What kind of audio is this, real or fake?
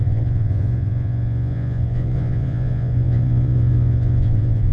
fake